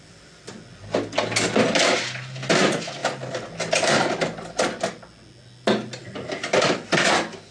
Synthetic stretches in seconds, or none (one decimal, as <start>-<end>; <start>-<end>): none